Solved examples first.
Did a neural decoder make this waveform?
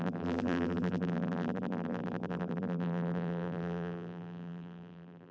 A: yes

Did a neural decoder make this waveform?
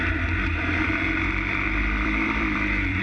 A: yes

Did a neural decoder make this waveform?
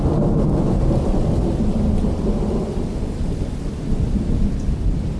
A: no